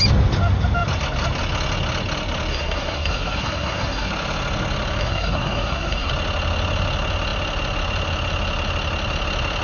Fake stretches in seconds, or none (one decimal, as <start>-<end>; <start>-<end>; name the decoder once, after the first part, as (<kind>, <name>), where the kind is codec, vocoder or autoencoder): 2.5-4.1 (codec, SNAC); 5.0-6.1